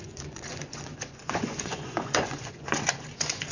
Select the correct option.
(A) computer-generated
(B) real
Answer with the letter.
A